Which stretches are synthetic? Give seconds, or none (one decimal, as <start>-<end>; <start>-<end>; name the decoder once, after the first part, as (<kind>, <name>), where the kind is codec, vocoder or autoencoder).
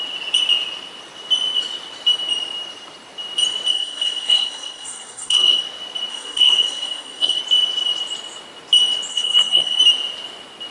3.7-5.6 (codec, SNAC); 6.1-7.4; 9.1-9.8